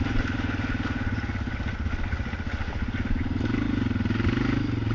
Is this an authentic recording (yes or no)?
yes